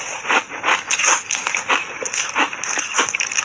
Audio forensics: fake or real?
real